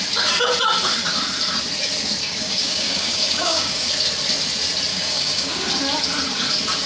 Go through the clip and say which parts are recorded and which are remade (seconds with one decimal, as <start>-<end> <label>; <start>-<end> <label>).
0.0-2.2 recorded; 2.2-3.9 remade; 3.9-4.9 recorded; 4.9-5.7 remade; 5.7-6.9 recorded